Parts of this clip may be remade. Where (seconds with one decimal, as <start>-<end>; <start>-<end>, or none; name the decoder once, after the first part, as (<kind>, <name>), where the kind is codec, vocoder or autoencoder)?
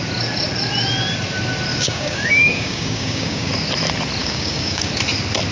1.7-3.5 (codec, DAC); 4.2-4.9